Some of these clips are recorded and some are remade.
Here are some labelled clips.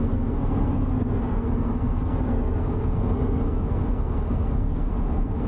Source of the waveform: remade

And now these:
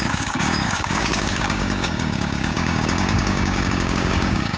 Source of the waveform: remade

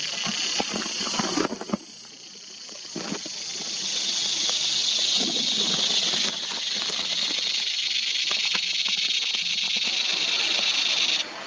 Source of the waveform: recorded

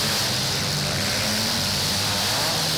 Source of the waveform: recorded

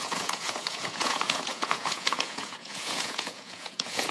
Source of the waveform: remade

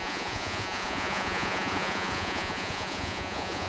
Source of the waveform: remade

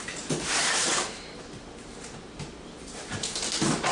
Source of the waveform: remade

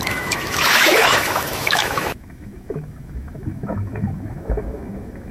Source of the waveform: remade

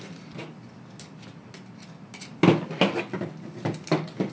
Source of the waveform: recorded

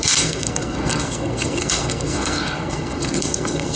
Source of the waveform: remade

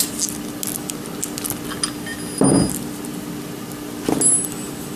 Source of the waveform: recorded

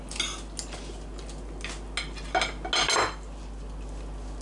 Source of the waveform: recorded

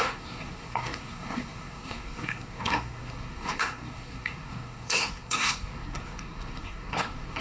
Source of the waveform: remade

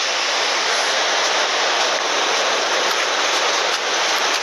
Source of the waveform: recorded